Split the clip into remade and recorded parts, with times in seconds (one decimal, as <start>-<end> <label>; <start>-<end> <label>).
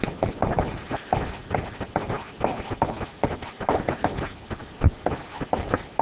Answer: 0.0-6.0 recorded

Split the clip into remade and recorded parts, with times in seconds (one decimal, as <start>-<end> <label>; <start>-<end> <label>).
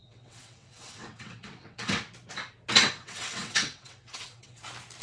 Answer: 0.0-2.0 remade; 2.0-2.8 recorded; 2.8-4.6 remade; 4.6-5.0 recorded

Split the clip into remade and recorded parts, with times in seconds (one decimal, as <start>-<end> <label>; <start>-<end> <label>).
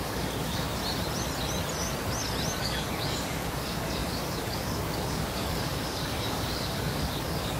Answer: 0.0-0.8 remade; 0.8-2.6 recorded; 2.6-7.6 remade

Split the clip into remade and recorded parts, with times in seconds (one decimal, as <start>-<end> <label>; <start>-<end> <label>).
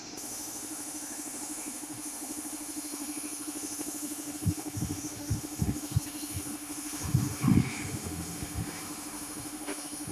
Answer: 0.0-10.1 remade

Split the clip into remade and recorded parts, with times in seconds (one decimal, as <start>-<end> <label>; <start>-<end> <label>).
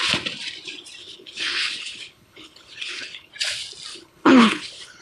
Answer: 0.0-1.0 recorded; 1.0-3.3 remade; 3.3-3.9 recorded; 3.9-5.0 remade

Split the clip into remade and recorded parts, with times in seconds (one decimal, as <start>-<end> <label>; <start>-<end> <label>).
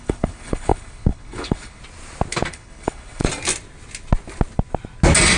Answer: 0.0-1.8 remade; 1.8-2.5 recorded; 2.5-3.2 remade; 3.2-5.4 recorded